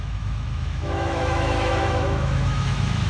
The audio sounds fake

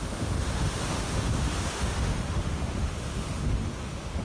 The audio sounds fake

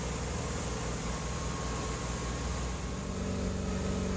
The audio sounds real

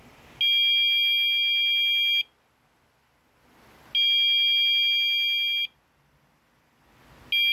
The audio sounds real